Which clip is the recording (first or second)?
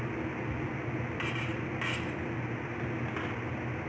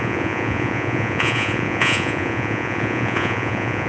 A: first